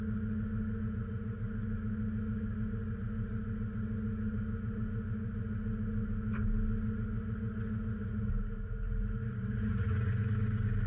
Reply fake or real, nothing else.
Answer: real